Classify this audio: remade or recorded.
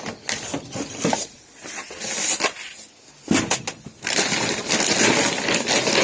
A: recorded